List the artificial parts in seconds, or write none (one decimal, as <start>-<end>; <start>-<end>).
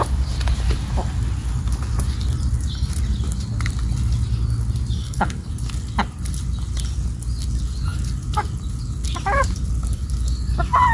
5.0-5.5